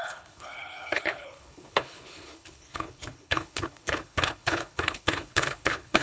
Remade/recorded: remade